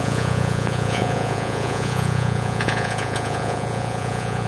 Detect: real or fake fake